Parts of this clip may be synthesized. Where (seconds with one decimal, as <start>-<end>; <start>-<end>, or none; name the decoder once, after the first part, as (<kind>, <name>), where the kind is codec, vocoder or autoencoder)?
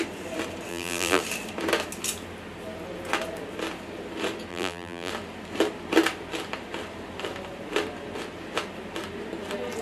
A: 0.7-1.2 (vocoder, BigVGAN v2); 4.5-5.1